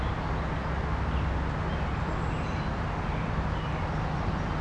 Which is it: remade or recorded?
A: recorded